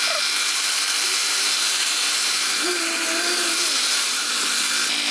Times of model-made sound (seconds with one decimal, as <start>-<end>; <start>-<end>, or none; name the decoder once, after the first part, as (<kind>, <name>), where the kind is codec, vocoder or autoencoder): 1.2-4.3 (vocoder, BigVGAN v2)